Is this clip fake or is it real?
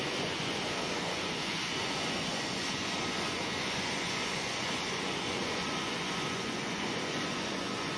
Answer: fake